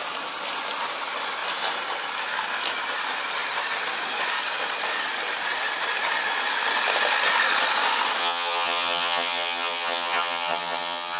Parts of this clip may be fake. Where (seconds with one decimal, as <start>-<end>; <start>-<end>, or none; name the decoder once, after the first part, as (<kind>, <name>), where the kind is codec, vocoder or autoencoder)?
8.2-11.2 (vocoder, HiFi-GAN)